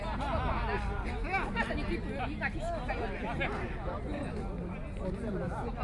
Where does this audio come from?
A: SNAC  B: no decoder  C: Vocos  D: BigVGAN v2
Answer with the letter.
B